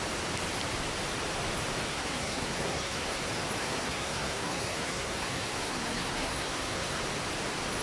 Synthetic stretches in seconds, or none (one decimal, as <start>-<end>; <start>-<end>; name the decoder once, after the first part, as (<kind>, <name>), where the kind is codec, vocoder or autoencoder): 1.9-3.2 (codec, SNAC); 3.6-7.0